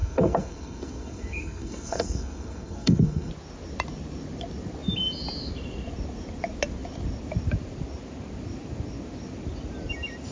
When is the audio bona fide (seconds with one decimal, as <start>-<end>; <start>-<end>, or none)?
3.3-10.3